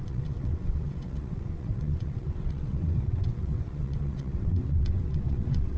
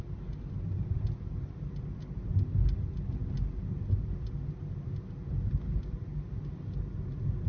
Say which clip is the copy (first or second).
first